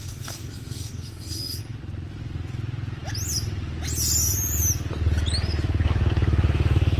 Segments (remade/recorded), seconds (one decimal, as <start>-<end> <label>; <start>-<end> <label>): 0.0-1.6 remade; 1.6-7.0 recorded